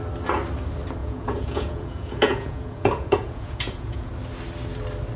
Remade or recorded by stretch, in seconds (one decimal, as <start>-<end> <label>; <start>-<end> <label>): 0.0-1.0 recorded; 1.0-4.1 remade; 4.1-5.2 recorded